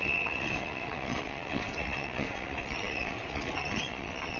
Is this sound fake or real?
fake